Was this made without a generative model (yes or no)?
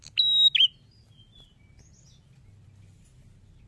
yes